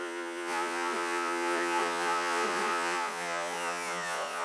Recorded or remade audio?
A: remade